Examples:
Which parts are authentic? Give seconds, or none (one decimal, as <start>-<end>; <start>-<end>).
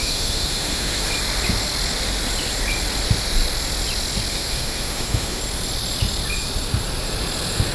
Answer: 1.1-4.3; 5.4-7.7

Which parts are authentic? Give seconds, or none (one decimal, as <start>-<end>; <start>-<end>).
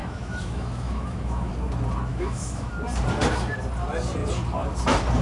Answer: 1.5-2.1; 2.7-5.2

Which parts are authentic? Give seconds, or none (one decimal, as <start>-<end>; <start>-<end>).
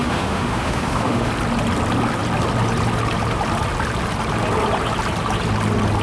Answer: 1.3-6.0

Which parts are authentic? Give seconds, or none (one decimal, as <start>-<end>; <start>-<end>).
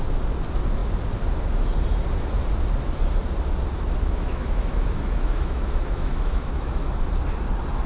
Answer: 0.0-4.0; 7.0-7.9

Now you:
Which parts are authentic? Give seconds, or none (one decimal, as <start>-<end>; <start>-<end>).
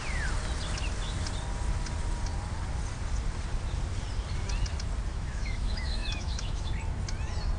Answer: 0.0-5.1; 6.7-7.6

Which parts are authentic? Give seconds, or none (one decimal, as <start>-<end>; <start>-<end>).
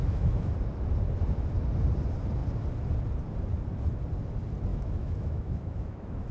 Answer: 0.5-4.7